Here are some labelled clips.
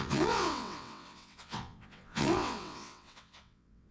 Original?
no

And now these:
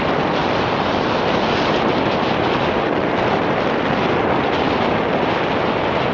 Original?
yes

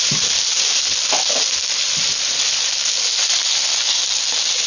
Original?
yes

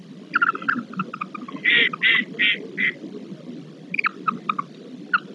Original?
yes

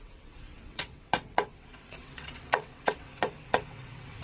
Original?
no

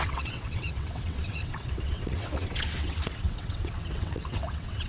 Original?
no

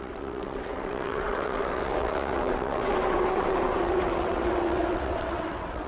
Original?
no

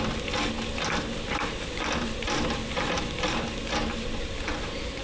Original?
yes